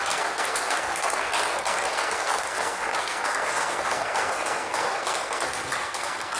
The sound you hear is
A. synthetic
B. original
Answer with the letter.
A